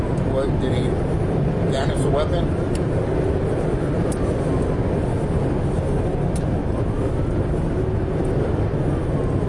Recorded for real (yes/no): yes